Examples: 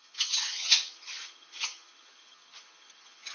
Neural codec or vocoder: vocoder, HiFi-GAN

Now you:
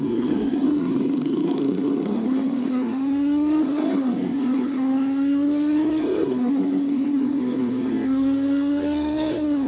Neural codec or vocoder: codec, SNAC